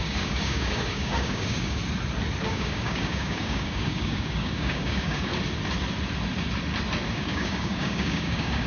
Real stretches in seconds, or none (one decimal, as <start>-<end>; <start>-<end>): 1.8-2.4; 5.3-7.1